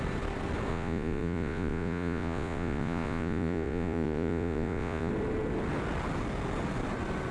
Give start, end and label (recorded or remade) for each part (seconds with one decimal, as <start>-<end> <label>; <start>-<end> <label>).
0.0-0.7 recorded; 0.7-5.1 remade; 5.1-7.3 recorded